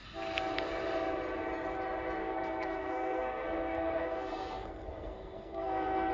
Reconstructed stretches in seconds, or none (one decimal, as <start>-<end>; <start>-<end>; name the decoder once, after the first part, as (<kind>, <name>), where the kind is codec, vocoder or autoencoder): 2.2-6.1 (codec, SNAC)